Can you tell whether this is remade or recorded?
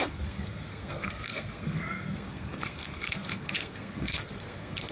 remade